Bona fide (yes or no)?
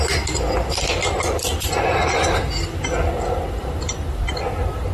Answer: no